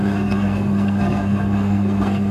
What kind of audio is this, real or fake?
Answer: fake